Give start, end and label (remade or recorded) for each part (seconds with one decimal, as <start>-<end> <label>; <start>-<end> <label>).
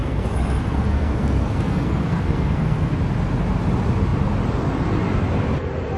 0.0-2.9 remade; 2.9-6.0 recorded